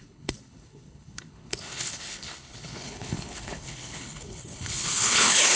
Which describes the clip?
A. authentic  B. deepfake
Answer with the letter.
B